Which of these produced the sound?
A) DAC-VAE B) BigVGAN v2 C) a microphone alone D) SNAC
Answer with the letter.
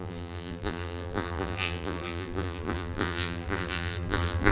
B